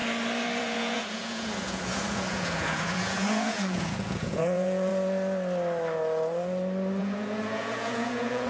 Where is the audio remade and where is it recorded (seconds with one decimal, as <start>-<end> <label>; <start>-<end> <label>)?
0.0-0.6 recorded; 0.6-4.9 remade; 4.9-7.0 recorded; 7.0-8.5 remade